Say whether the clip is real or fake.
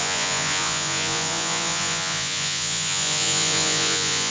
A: fake